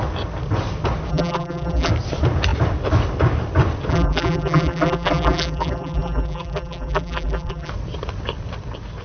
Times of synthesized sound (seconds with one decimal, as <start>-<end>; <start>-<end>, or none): 1.1-1.9; 3.9-7.7